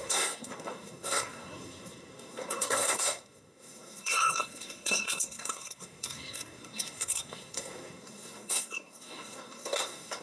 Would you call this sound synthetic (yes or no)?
yes